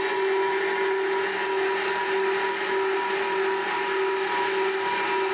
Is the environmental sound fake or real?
real